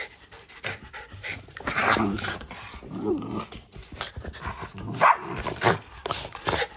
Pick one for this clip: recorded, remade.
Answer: recorded